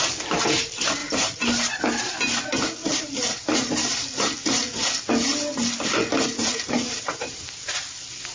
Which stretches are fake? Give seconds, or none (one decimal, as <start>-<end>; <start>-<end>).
1.0-2.0; 2.8-3.7; 6.0-7.4